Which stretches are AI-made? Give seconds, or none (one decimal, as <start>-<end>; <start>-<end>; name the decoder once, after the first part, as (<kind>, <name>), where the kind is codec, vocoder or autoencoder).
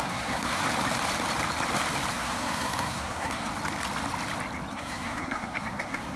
0.0-0.6 (codec, SNAC); 2.1-3.5; 4.7-6.2